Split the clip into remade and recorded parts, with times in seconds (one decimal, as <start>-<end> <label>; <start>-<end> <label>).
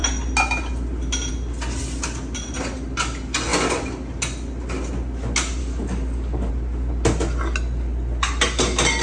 0.0-5.6 recorded; 5.6-6.5 remade; 6.5-9.0 recorded